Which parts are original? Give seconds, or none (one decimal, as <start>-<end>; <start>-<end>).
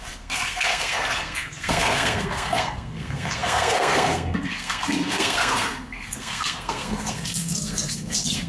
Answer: none